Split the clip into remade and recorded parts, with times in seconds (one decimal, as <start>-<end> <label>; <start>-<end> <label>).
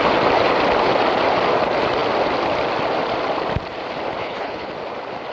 0.0-4.2 recorded; 4.2-4.7 remade; 4.7-5.3 recorded